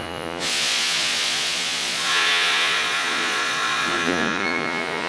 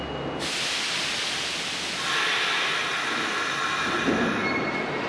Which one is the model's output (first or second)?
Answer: first